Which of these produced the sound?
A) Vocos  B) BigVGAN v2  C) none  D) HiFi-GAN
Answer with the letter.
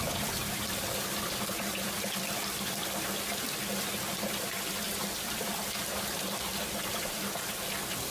B